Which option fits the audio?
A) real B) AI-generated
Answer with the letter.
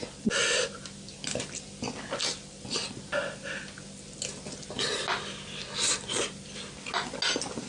A